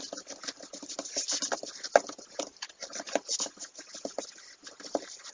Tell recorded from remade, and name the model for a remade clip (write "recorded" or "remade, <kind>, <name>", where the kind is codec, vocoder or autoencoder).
recorded